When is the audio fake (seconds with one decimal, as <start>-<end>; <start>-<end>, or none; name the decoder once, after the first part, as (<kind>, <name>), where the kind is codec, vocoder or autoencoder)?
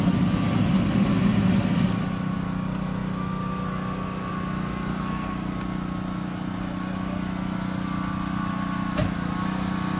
4.9-5.5 (codec, SNAC)